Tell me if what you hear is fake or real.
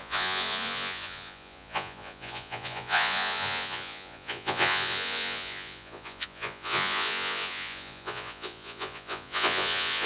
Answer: fake